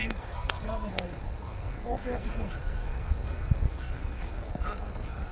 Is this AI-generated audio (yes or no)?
yes